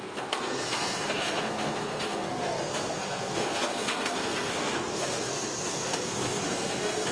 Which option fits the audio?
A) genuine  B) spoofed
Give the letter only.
B